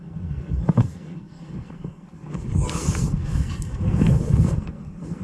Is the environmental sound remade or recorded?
remade